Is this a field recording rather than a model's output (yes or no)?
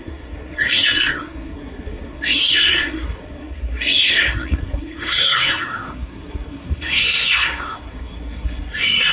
no